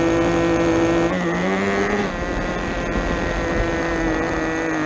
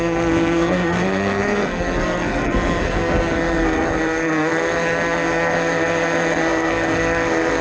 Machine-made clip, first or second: second